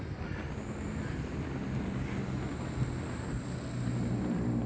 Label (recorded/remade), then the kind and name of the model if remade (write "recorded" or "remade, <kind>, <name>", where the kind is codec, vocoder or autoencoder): recorded